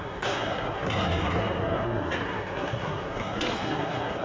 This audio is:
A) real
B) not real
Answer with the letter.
B